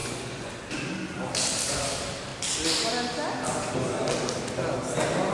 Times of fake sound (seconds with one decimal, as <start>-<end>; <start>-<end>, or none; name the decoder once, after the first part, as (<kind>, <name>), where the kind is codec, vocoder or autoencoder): 0.0-0.5 (vocoder, Vocos)